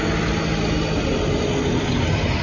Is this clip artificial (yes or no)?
no